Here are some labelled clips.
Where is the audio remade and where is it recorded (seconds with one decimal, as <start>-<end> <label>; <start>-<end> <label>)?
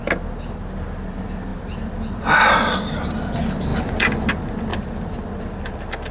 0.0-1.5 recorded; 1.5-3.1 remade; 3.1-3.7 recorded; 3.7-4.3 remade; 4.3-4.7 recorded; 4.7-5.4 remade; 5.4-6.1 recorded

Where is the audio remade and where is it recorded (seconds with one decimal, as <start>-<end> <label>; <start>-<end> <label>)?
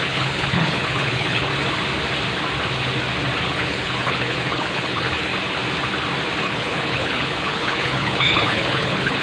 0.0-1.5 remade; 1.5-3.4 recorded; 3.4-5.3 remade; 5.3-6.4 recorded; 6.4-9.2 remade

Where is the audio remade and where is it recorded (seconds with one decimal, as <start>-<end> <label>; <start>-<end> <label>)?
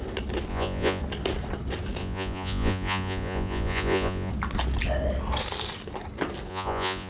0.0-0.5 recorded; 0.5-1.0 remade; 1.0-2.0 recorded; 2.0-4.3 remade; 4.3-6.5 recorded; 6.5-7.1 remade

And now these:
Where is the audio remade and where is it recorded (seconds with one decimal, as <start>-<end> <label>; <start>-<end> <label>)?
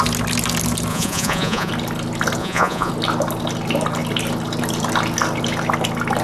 0.0-0.9 recorded; 0.9-1.7 remade; 1.7-2.4 recorded; 2.4-2.9 remade; 2.9-6.2 recorded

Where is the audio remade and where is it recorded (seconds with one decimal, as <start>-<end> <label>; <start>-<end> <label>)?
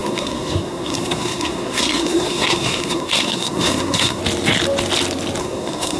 0.0-4.2 remade; 4.2-5.4 recorded; 5.4-6.0 remade